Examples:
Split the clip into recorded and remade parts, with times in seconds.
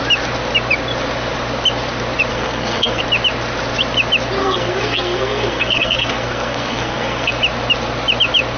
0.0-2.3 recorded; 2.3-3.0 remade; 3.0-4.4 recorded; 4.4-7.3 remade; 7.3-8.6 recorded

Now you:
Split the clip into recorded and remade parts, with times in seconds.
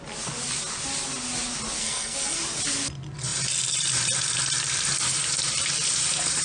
0.0-1.8 recorded; 1.8-2.4 remade; 2.4-6.4 recorded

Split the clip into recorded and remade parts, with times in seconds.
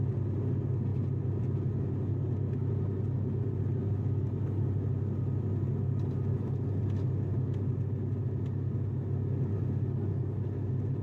0.0-11.0 recorded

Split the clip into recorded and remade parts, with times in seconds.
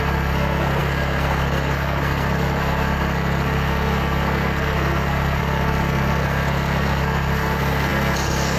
0.0-8.6 remade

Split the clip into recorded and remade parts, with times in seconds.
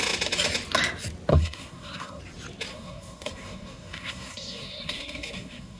0.0-1.3 recorded; 1.3-2.2 remade; 2.2-2.7 recorded; 2.7-5.8 remade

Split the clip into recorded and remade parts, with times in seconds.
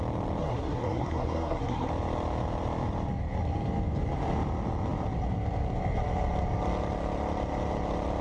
0.0-0.4 recorded; 0.4-1.9 remade; 1.9-8.2 recorded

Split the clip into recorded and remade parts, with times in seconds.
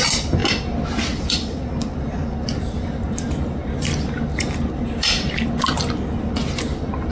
0.0-7.1 recorded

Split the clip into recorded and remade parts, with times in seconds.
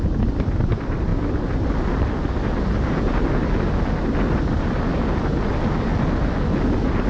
0.0-7.1 recorded